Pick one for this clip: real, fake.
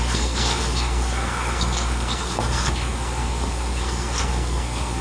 fake